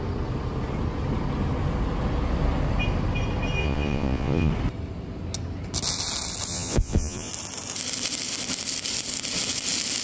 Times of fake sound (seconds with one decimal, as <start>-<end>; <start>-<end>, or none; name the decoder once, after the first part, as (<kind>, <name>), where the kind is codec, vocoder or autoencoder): 3.6-4.5 (vocoder, Vocos); 6.5-7.3